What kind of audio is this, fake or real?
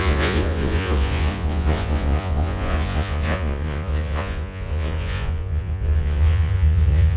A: fake